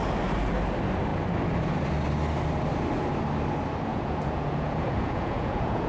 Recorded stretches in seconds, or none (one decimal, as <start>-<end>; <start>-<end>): 0.0-3.9